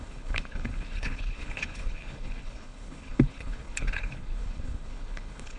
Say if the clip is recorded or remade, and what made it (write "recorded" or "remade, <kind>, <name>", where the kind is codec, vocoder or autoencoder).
remade, codec, HILCodec